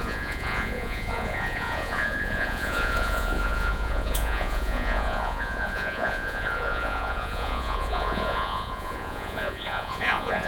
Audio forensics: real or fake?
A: fake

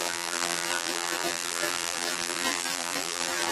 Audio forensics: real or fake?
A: fake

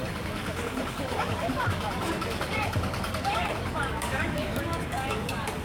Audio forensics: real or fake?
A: fake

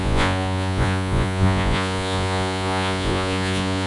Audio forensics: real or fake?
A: fake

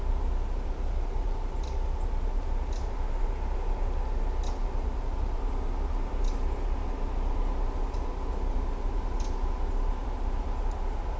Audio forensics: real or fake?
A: real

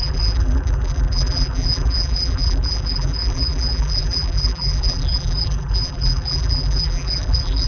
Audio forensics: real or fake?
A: fake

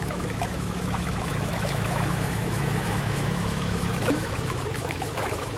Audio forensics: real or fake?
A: fake